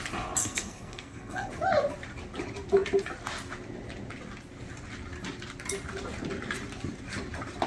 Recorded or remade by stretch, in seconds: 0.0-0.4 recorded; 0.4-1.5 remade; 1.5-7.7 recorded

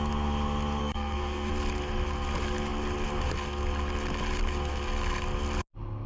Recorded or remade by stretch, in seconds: 0.0-0.8 recorded; 0.8-1.5 remade; 1.5-6.1 recorded

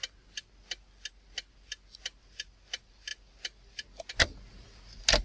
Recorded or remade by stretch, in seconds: 0.0-5.2 recorded

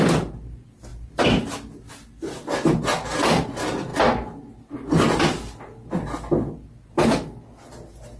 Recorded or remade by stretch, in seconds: 0.0-8.2 recorded

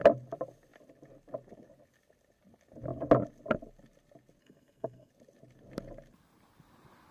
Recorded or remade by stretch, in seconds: 0.0-4.4 recorded; 4.4-5.1 remade; 5.1-7.1 recorded

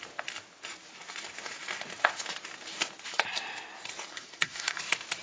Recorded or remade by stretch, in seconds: 0.0-4.1 recorded; 4.1-4.8 remade; 4.8-5.2 recorded